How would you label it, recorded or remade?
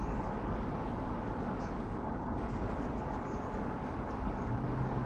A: remade